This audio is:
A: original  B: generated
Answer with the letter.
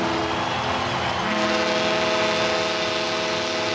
A